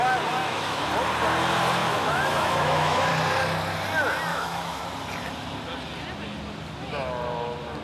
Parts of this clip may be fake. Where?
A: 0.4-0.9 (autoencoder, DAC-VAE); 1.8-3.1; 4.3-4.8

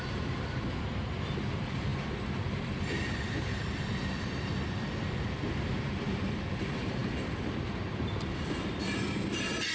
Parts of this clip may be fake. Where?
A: none